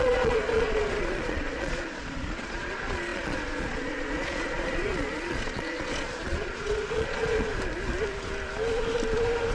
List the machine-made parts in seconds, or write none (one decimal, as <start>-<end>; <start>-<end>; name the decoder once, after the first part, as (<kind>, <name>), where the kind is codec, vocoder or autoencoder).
0.0-7.5 (vocoder, Vocos)